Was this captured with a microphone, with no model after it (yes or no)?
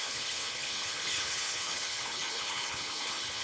no